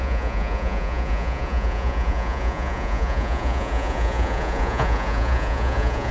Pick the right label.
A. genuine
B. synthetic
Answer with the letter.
B